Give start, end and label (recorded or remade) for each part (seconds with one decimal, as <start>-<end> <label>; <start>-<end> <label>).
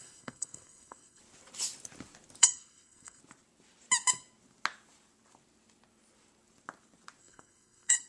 0.0-1.2 remade; 1.2-2.4 recorded; 2.4-3.2 remade; 3.2-7.2 recorded; 7.2-8.1 remade